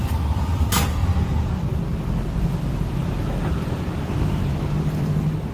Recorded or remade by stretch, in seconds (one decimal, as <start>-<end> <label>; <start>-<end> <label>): 0.0-1.0 remade; 1.0-2.4 recorded; 2.4-5.5 remade